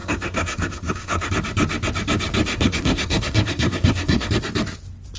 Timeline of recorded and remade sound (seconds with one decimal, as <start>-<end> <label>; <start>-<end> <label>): 0.0-1.3 remade; 1.3-2.5 recorded; 2.5-4.3 remade; 4.3-5.2 recorded